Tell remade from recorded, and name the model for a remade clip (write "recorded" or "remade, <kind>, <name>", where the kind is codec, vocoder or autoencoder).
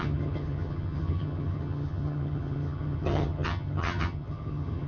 remade, vocoder, HiFi-GAN